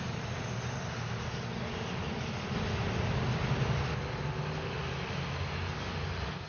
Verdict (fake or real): real